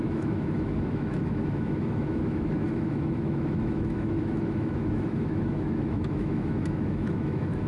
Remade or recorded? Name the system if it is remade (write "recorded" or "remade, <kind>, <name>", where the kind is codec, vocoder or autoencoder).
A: remade, autoencoder, DAC-VAE